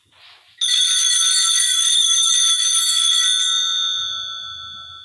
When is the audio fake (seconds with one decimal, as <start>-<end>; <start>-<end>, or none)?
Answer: 1.6-2.3